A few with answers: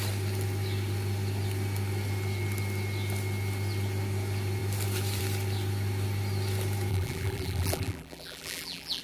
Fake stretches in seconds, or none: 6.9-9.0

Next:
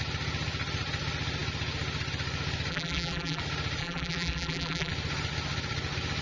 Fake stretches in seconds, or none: 2.7-3.4; 3.8-4.9

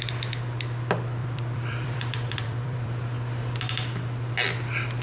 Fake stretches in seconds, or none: 1.2-3.0

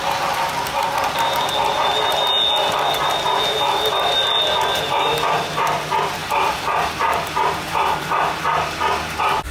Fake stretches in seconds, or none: 6.2-8.8

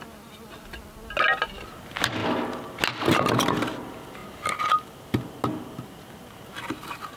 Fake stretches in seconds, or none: none

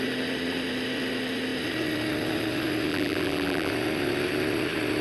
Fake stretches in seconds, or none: 2.9-3.7

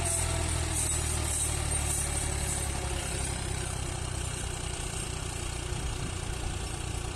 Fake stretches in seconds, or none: 3.0-5.2